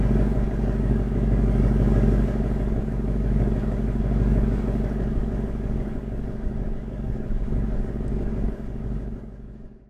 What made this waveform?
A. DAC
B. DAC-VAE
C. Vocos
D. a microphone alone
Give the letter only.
A